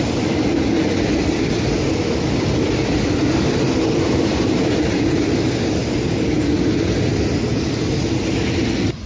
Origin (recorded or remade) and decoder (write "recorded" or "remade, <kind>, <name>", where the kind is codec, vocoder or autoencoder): recorded